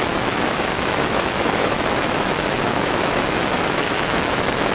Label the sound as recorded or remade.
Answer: remade